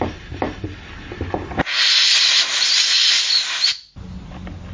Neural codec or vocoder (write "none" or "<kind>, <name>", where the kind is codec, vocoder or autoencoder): none